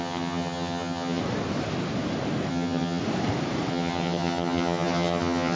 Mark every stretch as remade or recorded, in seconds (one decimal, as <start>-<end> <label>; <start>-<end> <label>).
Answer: 0.0-1.2 remade; 1.2-2.5 recorded; 2.5-3.0 remade; 3.0-3.7 recorded; 3.7-5.6 remade